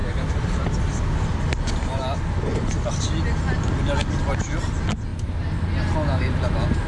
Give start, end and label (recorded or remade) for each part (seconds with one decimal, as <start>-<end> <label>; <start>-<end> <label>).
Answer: 0.0-6.9 recorded